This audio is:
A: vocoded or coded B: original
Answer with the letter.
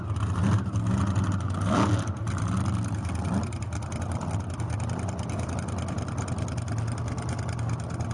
B